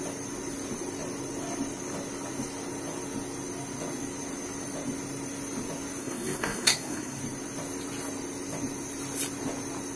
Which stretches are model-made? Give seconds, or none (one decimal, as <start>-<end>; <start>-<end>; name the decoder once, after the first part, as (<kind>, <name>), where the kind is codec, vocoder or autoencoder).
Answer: 6.0-7.2 (codec, SNAC)